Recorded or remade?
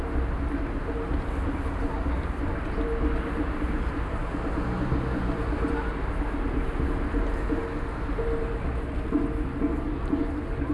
recorded